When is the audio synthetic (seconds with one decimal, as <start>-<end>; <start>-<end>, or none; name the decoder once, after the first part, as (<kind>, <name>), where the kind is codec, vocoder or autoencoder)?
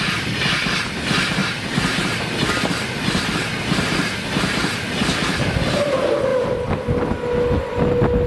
1.4-3.5 (vocoder, BigVGAN v2); 6.3-6.8